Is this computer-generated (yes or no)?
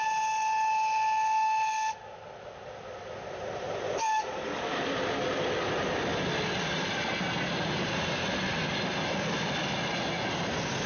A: no